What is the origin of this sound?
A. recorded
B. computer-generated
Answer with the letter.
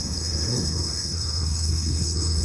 B